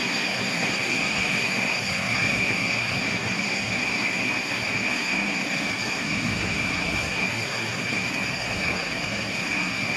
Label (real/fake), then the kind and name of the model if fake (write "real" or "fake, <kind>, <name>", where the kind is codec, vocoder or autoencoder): fake, codec, SNAC